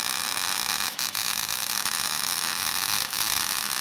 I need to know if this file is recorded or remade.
remade